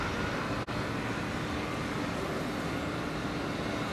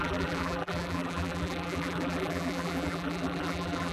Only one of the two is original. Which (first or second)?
first